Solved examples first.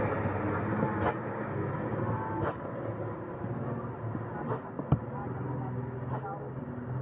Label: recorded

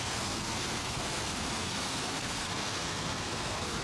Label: remade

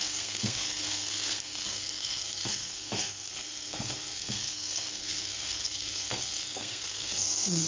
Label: remade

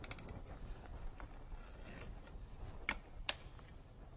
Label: recorded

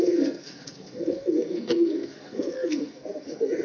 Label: remade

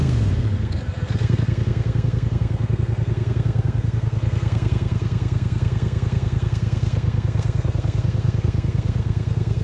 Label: remade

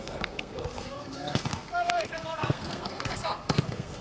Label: remade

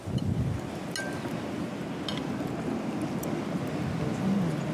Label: recorded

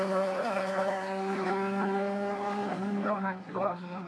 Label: remade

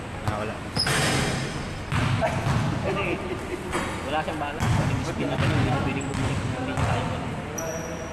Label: recorded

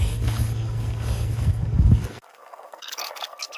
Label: remade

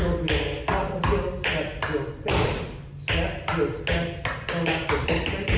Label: recorded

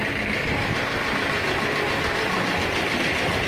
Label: recorded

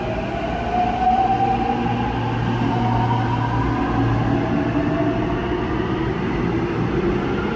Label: recorded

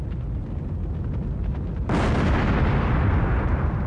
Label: recorded